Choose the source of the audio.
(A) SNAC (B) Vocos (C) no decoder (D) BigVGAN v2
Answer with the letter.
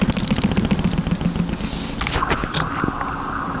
C